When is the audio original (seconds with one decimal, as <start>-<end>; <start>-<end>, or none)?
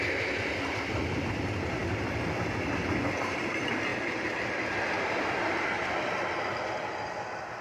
0.0-7.6